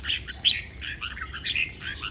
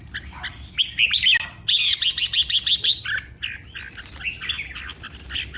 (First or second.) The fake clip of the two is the first